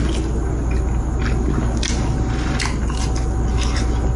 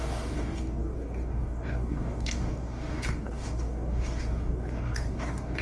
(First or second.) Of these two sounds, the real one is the first